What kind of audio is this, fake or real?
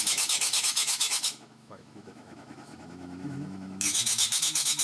fake